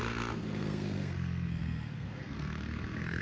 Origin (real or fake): fake